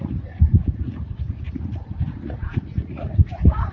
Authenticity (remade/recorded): remade